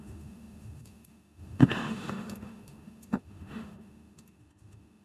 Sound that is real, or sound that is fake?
fake